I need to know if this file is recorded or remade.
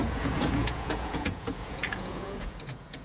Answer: remade